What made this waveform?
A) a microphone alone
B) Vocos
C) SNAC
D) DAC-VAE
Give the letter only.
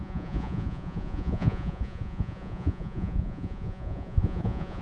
B